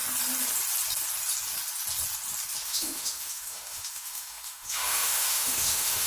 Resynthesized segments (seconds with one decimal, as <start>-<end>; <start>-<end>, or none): 2.6-6.1